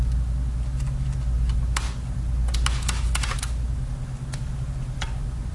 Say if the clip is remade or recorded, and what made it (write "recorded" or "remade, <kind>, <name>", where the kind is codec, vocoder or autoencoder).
recorded